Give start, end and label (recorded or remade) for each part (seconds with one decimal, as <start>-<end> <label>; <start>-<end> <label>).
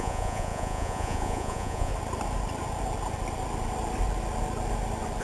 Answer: 0.0-1.9 remade; 1.9-5.2 recorded